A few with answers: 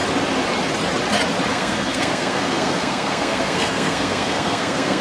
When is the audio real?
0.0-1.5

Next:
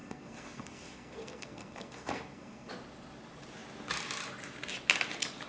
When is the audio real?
2.7-5.5

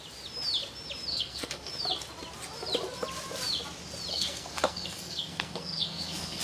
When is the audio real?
0.0-1.1; 1.7-4.1